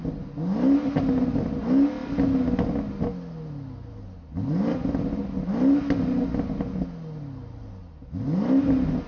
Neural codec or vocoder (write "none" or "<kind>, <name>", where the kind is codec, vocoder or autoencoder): none